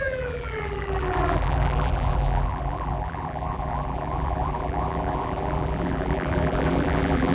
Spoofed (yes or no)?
yes